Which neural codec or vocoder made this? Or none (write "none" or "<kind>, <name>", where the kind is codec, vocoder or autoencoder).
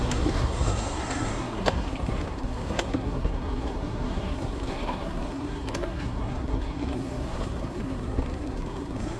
codec, SNAC